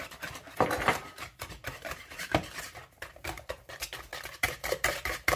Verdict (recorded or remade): remade